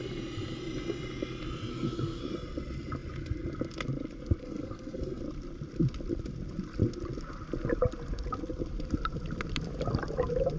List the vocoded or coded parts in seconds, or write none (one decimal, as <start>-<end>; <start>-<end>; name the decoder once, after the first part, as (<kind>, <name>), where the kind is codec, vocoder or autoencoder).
1.7-2.2 (codec, SNAC); 4.4-5.2